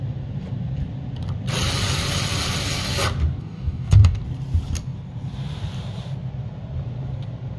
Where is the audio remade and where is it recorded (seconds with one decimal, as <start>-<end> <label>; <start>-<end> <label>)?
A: 0.0-3.4 recorded; 3.4-4.2 remade; 4.2-7.6 recorded